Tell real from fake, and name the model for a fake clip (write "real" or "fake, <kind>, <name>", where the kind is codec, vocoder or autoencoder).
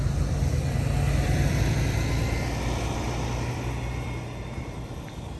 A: fake, vocoder, BigVGAN v2